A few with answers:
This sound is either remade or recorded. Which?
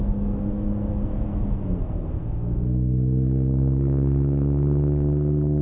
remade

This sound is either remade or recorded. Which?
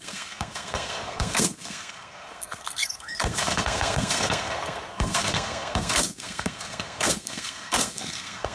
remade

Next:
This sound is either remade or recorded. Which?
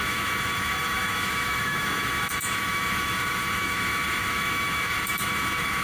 remade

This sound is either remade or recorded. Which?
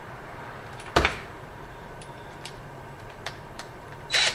remade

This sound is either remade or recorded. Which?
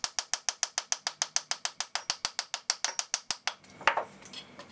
recorded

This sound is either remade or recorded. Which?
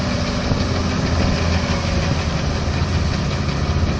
recorded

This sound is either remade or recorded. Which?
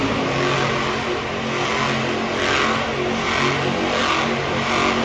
recorded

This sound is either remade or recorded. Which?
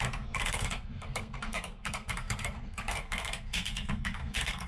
remade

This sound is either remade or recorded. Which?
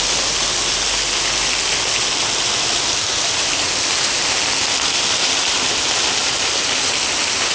recorded